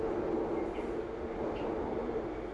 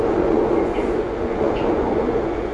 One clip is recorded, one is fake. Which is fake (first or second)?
second